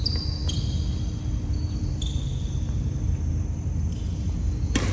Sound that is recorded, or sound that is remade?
recorded